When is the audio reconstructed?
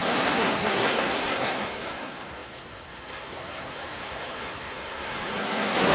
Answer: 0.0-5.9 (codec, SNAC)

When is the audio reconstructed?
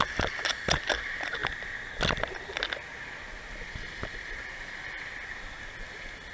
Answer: none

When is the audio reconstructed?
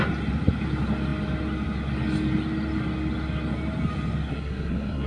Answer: 4.3-5.1 (codec, SNAC)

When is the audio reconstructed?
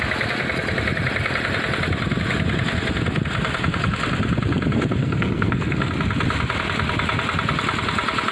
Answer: 5.0-5.9 (codec, SNAC)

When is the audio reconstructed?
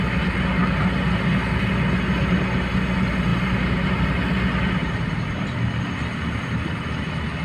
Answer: none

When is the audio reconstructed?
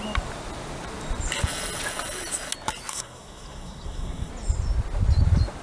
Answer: 2.9-4.3 (codec, SNAC)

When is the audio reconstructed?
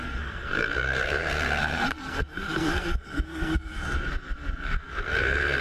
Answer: 0.0-5.6 (codec, SNAC)